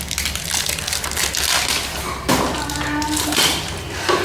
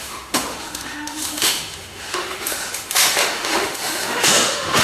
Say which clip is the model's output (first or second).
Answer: second